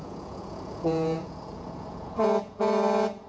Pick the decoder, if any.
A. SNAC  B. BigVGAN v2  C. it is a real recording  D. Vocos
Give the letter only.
D